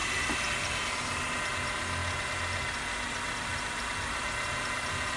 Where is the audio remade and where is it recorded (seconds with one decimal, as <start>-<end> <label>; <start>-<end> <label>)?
0.0-5.2 recorded